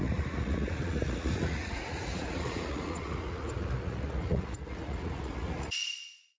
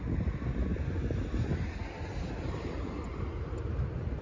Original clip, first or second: second